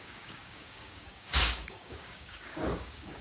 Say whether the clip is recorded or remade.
remade